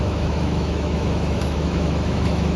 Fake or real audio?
fake